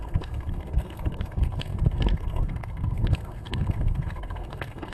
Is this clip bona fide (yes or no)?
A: no